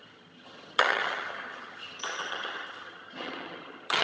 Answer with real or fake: fake